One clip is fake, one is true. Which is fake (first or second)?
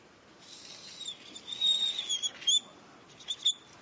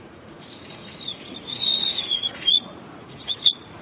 second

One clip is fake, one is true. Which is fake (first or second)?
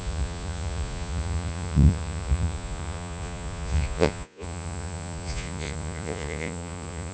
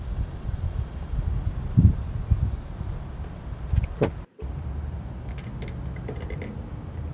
first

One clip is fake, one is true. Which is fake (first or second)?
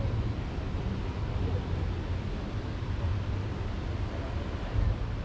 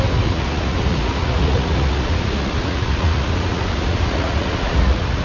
second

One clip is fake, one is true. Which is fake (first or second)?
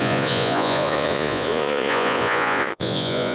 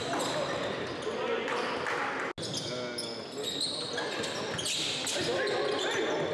first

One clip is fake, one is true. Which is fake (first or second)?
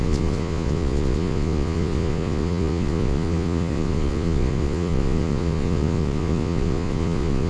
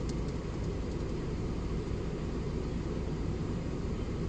first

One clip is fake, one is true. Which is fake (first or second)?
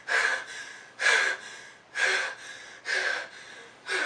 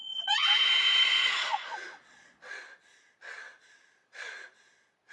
second